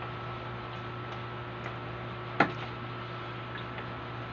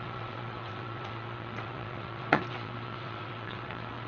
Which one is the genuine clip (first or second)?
first